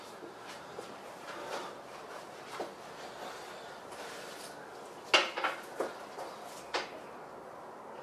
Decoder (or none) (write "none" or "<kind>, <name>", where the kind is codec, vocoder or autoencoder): none